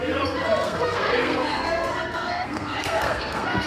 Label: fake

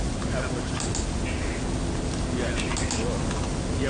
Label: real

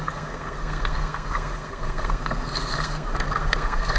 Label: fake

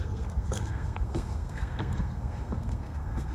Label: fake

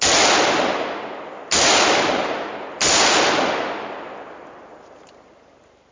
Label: real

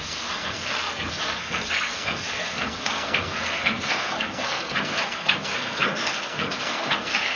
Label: fake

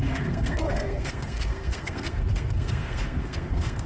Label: fake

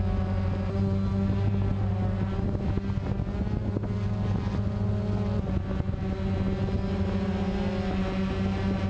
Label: real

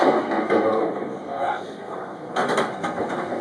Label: fake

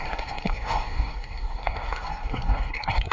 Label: fake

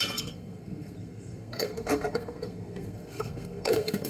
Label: fake